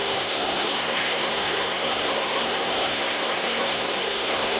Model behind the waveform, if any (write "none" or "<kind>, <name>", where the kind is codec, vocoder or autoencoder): codec, SNAC